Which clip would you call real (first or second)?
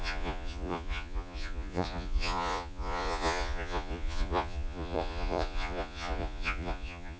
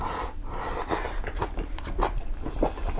second